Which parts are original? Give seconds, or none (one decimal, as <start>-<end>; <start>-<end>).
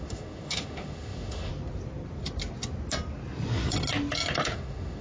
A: 1.5-4.4